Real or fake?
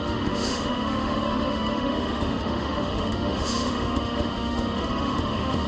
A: fake